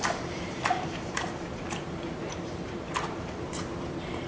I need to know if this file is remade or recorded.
remade